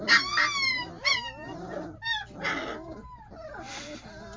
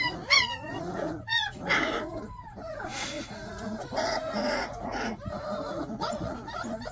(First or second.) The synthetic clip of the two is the second